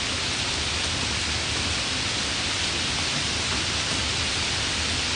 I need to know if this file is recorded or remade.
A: recorded